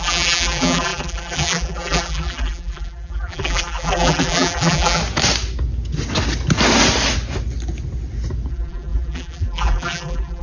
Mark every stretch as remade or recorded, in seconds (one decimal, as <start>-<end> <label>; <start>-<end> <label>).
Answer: 0.0-5.0 remade; 5.0-8.5 recorded; 8.5-10.4 remade